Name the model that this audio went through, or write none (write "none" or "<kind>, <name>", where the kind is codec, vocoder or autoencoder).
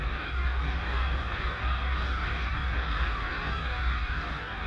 codec, DAC